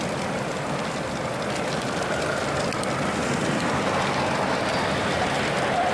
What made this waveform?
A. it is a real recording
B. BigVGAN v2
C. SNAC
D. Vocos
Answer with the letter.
A